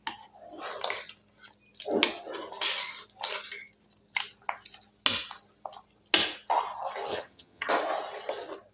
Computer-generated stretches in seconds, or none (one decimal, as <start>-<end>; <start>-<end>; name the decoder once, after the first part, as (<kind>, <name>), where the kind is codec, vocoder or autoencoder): 7.1-7.7 (vocoder, HiFi-GAN)